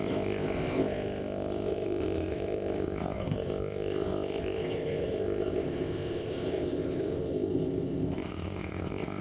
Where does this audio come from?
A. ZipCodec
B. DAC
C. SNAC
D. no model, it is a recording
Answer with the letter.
A